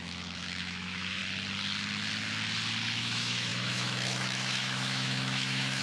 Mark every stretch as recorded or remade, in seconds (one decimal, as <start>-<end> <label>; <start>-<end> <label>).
0.0-1.2 remade; 1.2-3.0 recorded; 3.0-5.8 remade